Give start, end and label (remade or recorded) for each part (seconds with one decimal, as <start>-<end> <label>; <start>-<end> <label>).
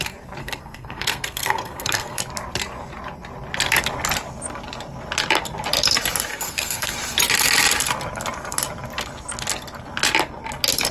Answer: 0.0-0.4 recorded; 0.4-2.2 remade; 2.2-6.3 recorded; 6.3-6.9 remade; 6.9-10.9 recorded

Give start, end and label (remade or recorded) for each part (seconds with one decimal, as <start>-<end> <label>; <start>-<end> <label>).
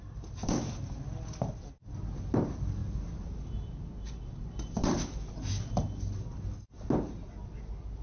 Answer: 0.0-8.0 recorded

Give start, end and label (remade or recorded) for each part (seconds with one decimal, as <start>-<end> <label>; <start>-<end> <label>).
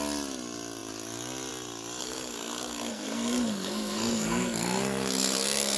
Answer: 0.0-2.0 recorded; 2.0-5.8 remade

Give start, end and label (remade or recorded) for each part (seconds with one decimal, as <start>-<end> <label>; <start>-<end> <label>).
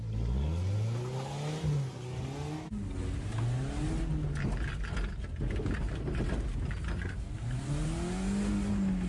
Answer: 0.0-9.1 recorded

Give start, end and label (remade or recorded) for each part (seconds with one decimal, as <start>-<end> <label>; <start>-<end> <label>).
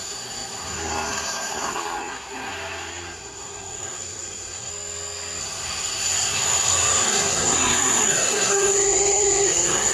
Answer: 0.0-4.7 remade; 4.7-5.4 recorded; 5.4-9.9 remade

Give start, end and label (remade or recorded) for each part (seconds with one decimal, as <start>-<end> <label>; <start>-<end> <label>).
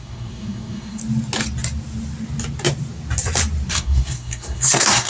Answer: 0.0-1.0 remade; 1.0-3.7 recorded; 3.7-5.1 remade